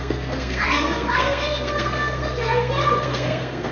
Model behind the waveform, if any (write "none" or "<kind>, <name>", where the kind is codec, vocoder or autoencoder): codec, SNAC